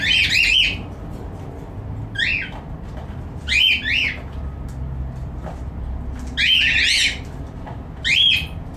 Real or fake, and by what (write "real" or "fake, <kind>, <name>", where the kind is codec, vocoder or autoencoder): real